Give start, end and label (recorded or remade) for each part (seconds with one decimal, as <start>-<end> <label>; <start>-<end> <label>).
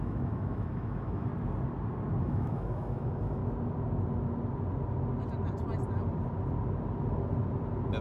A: 0.0-1.3 remade; 1.3-2.2 recorded; 2.2-3.4 remade; 3.4-8.0 recorded